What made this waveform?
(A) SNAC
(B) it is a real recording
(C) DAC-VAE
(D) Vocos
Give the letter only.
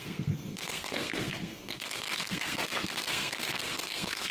A